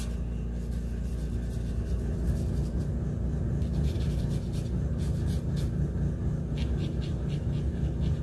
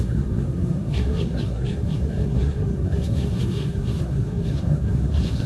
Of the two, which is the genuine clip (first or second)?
first